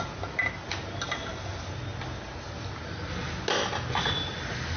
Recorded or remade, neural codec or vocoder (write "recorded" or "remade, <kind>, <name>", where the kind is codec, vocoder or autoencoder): recorded